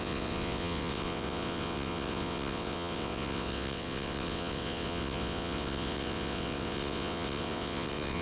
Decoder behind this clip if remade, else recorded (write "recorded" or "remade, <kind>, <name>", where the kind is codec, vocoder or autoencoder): remade, vocoder, WaveNeXt